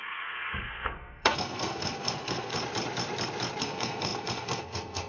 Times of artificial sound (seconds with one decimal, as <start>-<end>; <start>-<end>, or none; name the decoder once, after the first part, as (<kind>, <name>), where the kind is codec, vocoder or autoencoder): 0.0-2.5 (codec, SNAC); 3.6-5.1